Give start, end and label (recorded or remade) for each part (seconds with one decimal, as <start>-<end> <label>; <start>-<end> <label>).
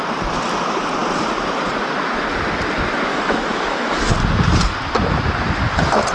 0.0-3.1 recorded; 3.1-4.1 remade; 4.1-6.1 recorded